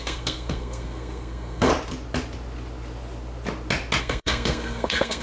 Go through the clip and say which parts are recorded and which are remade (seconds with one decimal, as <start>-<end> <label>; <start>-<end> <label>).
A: 0.0-1.7 remade; 1.7-4.0 recorded; 4.0-5.2 remade